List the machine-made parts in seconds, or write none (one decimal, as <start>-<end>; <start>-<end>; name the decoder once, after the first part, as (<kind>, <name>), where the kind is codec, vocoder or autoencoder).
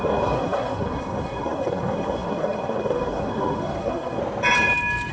0.0-4.2 (codec, SNAC)